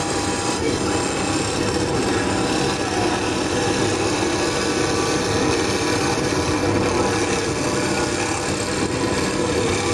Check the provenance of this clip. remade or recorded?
recorded